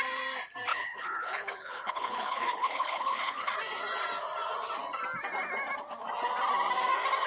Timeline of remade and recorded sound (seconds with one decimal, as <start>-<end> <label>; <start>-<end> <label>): 0.0-0.7 recorded; 0.7-3.5 remade; 3.5-7.3 recorded